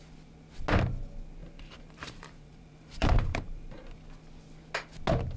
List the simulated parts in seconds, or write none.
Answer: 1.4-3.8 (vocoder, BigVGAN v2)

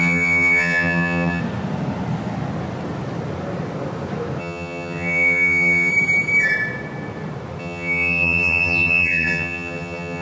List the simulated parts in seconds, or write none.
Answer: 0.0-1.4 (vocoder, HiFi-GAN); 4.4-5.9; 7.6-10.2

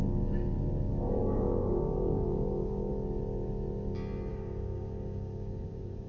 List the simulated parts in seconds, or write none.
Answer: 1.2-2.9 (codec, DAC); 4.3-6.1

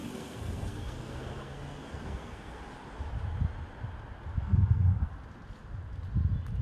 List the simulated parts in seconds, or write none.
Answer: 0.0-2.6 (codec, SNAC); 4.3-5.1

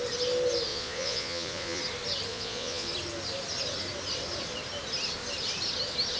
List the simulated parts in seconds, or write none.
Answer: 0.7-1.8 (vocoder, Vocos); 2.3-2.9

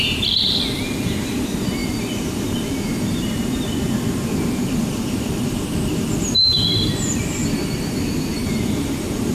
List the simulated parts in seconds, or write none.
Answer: 1.8-6.6 (vocoder, BigVGAN v2); 8.3-9.3